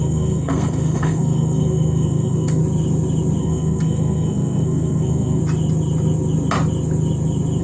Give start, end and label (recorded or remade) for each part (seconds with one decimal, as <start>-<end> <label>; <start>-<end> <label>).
0.0-2.6 remade; 2.6-3.4 recorded; 3.4-5.4 remade; 5.4-7.6 recorded